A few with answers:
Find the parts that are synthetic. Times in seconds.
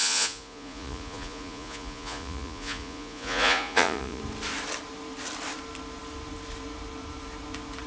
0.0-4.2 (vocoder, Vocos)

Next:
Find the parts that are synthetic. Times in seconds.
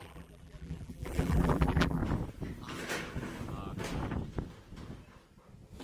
0.0-2.0 (vocoder, BigVGAN v2)